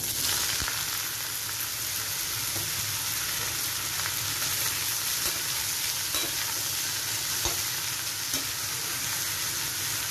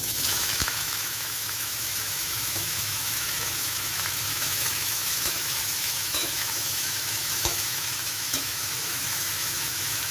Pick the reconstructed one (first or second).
second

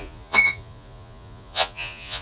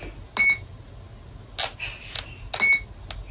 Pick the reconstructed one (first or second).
first